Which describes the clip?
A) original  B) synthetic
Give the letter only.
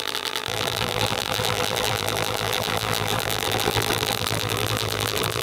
B